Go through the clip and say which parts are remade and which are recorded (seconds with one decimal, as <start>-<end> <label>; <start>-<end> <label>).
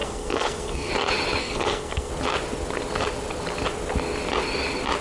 0.0-0.9 remade; 0.9-1.4 recorded; 1.4-2.1 remade; 2.1-5.0 recorded